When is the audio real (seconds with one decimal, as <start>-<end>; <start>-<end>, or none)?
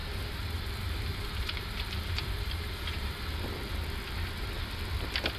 3.2-5.4